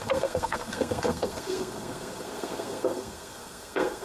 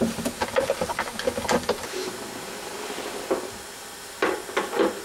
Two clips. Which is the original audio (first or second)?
second